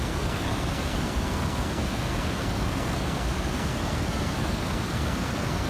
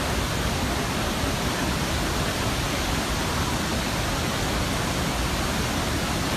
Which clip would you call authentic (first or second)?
second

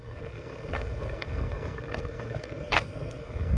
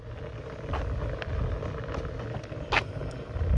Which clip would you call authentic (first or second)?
second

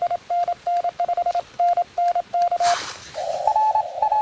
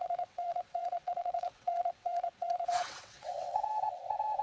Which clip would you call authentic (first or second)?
first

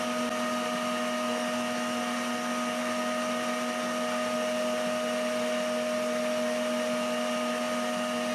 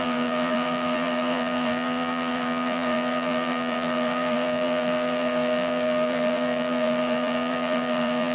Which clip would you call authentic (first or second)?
first